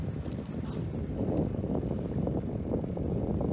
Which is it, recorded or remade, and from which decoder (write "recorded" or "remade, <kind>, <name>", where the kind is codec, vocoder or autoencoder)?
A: recorded